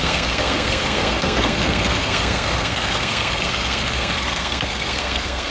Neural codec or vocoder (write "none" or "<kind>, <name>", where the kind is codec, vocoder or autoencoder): codec, SNAC